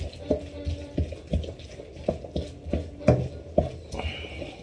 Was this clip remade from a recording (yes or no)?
no